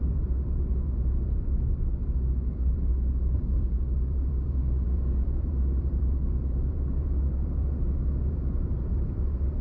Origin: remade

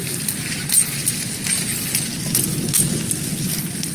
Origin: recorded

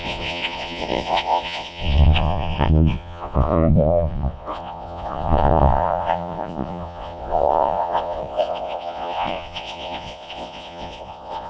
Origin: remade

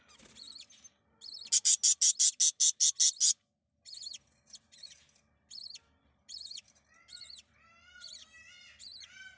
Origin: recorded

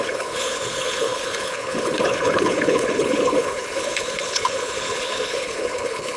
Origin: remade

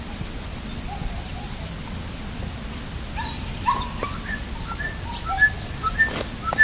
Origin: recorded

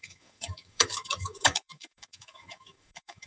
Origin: remade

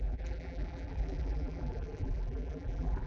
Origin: remade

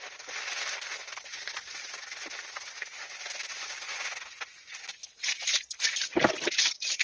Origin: recorded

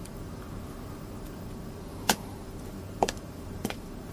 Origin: remade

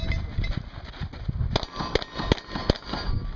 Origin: recorded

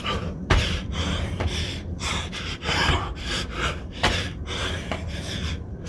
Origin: remade